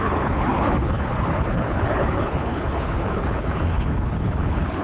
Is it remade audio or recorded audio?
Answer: remade